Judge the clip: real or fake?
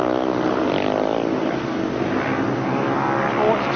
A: real